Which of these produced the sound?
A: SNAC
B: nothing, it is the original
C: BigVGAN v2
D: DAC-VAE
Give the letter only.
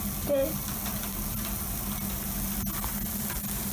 B